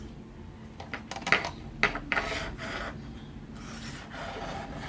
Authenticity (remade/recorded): recorded